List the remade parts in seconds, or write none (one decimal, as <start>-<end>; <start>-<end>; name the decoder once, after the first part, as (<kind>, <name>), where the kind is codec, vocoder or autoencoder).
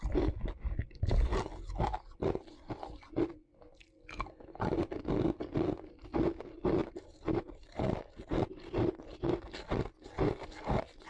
6.8-9.4 (vocoder, BigVGAN v2)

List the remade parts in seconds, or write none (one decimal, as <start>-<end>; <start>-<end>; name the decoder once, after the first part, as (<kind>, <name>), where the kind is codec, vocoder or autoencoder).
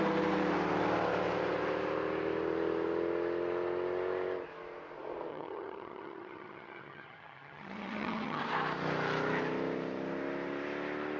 5.3-8.4 (vocoder, HiFi-GAN)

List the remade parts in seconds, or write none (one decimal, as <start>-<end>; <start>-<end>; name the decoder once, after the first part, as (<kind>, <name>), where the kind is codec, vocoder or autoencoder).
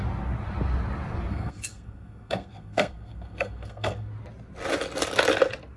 1.3-4.1 (codec, SNAC)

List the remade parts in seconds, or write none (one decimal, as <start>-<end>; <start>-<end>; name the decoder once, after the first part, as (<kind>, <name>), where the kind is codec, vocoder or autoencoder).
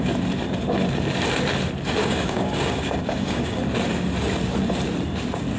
2.0-3.6 (codec, DAC)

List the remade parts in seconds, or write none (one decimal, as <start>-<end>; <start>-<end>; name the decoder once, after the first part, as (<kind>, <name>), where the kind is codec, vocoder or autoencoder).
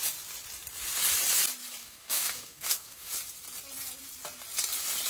1.8-3.1 (codec, DAC)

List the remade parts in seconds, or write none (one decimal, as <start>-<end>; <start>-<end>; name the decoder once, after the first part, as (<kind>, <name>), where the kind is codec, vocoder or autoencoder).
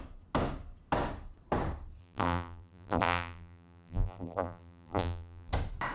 2.0-5.5 (vocoder, BigVGAN v2)